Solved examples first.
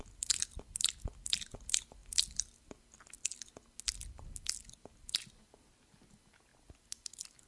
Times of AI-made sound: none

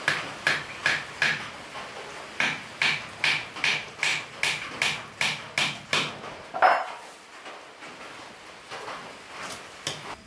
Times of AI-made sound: none

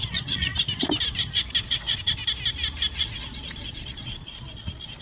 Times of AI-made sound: 0.0-0.5 (vocoder, Vocos); 1.6-2.2; 3.0-5.0